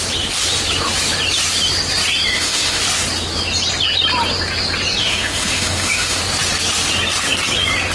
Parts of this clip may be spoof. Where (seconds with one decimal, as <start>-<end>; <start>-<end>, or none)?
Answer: 2.3-2.8; 5.0-6.2